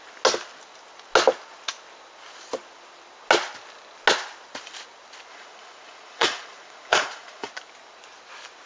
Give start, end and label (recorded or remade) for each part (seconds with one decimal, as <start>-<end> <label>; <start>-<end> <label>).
0.0-5.3 recorded; 5.3-7.5 remade; 7.5-8.7 recorded